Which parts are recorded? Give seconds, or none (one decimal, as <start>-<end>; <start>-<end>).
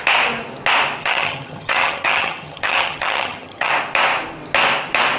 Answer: 0.0-1.0; 3.7-5.2